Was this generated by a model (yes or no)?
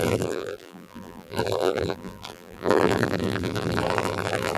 yes